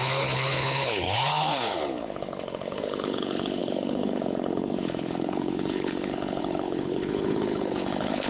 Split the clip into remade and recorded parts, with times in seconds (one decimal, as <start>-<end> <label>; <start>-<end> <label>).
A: 0.0-8.3 remade